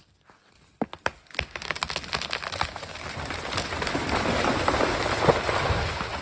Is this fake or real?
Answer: real